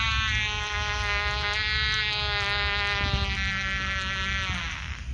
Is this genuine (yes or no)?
yes